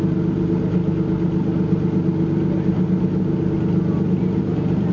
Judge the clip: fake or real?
real